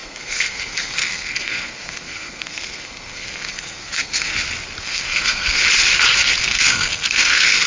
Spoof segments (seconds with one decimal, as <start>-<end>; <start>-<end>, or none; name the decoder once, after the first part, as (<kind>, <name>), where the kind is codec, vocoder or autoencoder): 0.0-4.3 (codec, SNAC); 4.8-5.6; 6.4-7.7